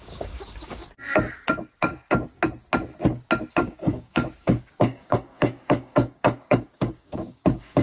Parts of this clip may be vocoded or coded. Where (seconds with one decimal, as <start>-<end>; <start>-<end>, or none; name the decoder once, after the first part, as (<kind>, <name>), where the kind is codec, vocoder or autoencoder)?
0.0-0.8 (codec, DAC); 3.5-7.8